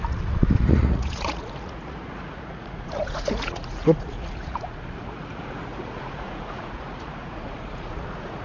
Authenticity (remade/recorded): remade